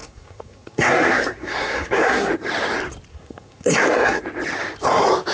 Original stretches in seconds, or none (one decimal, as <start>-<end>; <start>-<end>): 2.3-3.1; 4.2-5.3

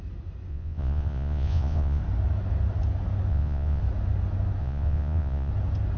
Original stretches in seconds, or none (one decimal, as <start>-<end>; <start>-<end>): 0.0-0.5; 2.0-3.3; 3.8-4.6; 5.5-6.0

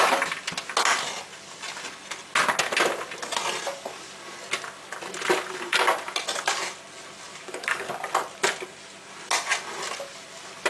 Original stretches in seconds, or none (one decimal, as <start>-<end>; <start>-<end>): 0.0-7.3; 7.9-10.7

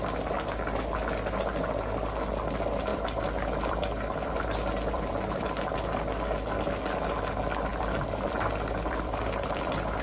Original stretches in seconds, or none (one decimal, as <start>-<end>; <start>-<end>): 0.0-2.9; 5.6-7.7

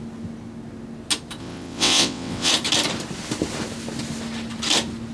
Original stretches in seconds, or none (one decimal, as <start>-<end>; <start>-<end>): 0.0-1.4; 2.5-5.1

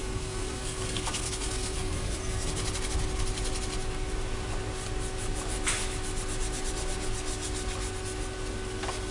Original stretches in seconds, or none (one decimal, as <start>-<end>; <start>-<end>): 2.5-9.1

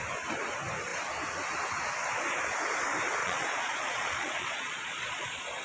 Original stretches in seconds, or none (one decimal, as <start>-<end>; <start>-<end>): 0.0-3.2

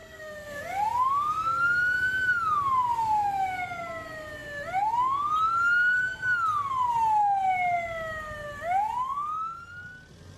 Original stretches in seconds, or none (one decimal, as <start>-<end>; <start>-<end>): 0.6-10.4